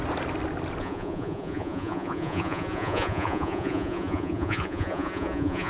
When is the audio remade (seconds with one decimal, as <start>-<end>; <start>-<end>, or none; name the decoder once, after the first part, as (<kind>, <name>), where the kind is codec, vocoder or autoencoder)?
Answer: 0.8-5.7 (vocoder, Vocos)